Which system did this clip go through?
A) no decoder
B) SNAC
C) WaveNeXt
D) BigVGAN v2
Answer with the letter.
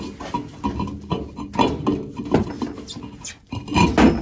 A